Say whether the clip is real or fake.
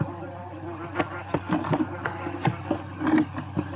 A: real